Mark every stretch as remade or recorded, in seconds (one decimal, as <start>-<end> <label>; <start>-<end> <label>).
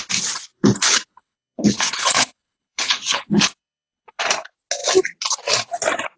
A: 0.0-0.5 recorded; 0.5-4.2 remade; 4.2-6.2 recorded